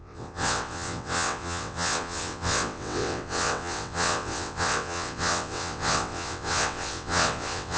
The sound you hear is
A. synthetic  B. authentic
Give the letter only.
A